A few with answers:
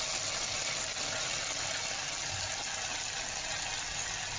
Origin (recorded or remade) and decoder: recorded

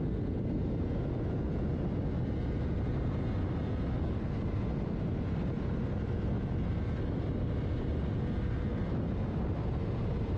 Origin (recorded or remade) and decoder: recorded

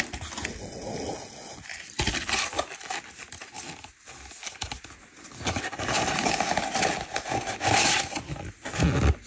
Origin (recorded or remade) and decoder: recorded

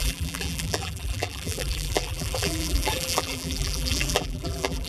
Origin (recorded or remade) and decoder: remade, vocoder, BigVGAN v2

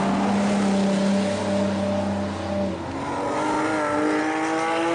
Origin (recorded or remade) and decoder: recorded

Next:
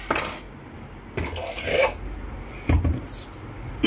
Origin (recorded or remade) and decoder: recorded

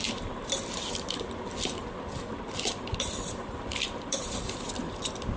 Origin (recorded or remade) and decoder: remade, vocoder, BigVGAN v2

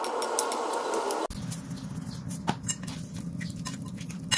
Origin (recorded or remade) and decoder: recorded